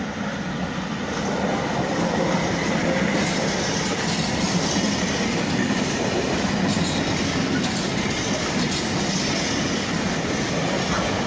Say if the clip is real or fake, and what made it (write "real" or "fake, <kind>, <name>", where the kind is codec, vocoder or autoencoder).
real